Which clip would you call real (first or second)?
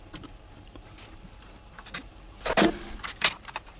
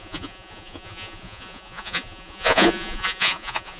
first